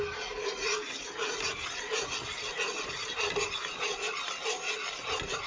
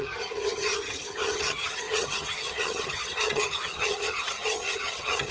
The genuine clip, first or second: first